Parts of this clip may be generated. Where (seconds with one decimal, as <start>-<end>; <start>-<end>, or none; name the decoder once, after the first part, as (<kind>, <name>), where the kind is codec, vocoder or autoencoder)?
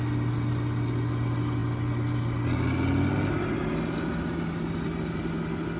none